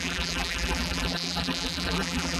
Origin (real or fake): fake